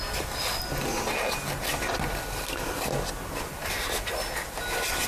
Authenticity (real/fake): real